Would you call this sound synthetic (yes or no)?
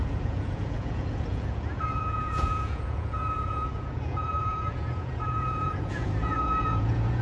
yes